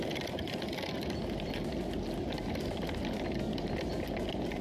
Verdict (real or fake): real